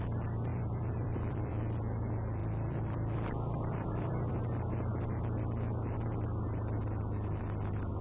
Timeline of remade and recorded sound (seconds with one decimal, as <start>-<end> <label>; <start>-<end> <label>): 0.0-0.5 recorded; 0.5-1.5 remade; 1.5-2.4 recorded; 2.4-4.3 remade; 4.3-8.0 recorded